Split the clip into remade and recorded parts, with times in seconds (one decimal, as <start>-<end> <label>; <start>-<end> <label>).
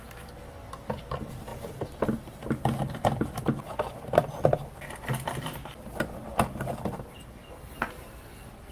0.0-8.7 recorded